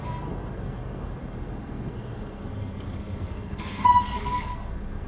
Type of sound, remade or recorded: remade